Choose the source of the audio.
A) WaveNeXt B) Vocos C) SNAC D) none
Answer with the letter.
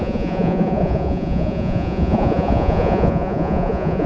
B